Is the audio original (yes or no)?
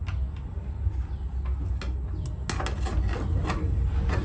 yes